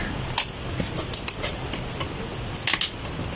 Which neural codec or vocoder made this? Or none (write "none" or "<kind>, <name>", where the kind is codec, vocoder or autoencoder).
none